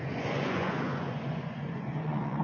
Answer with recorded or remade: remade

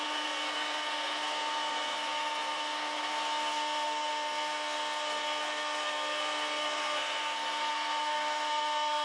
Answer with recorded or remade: remade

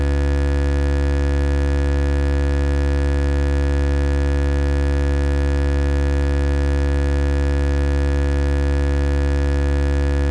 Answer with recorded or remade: recorded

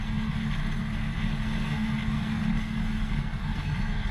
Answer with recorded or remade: remade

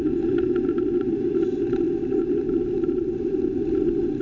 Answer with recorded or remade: recorded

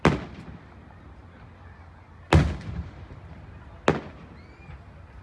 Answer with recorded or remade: recorded